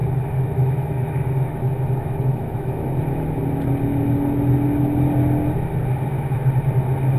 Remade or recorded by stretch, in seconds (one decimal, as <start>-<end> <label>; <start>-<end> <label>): 0.0-3.4 remade; 3.4-7.2 recorded